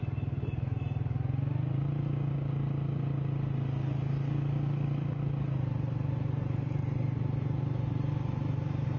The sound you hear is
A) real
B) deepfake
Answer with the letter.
A